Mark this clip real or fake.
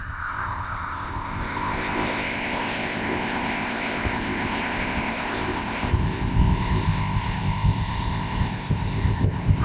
fake